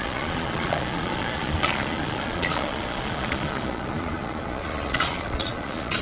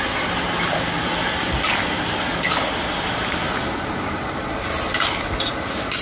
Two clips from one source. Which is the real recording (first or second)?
second